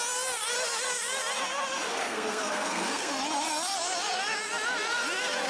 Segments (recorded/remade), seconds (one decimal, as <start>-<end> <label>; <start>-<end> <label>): 0.0-1.9 recorded; 1.9-3.1 remade; 3.1-5.5 recorded